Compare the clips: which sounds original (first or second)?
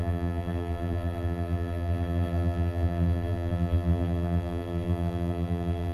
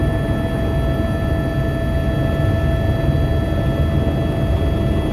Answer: second